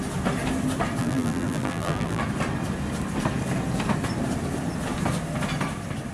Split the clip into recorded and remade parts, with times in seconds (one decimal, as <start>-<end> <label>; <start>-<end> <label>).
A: 0.0-1.0 recorded; 1.0-2.2 remade; 2.2-6.1 recorded